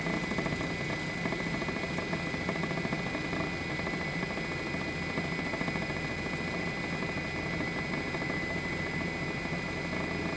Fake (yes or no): no